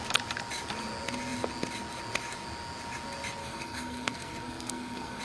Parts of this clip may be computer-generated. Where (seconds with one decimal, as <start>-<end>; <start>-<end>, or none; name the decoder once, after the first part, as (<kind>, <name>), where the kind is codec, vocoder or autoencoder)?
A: 3.4-5.2 (codec, SNAC)